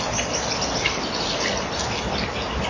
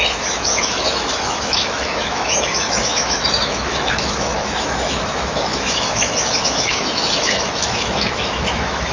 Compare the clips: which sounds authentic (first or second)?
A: first